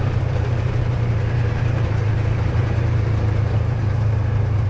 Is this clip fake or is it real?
fake